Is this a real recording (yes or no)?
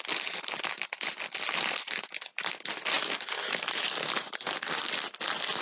yes